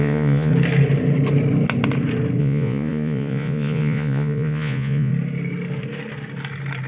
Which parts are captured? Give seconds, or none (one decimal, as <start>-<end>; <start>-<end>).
0.5-2.4; 5.1-6.9